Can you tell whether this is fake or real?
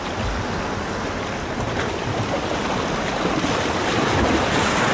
real